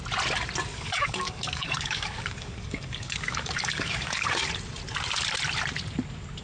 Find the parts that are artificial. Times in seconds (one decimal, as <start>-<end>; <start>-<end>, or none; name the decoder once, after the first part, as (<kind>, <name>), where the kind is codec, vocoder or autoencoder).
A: 0.7-4.5 (codec, DAC)